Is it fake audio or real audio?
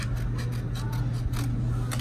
real